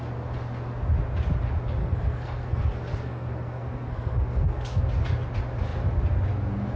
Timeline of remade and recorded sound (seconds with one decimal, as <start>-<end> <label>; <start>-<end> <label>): 0.0-1.8 recorded; 1.8-4.8 remade; 4.8-6.8 recorded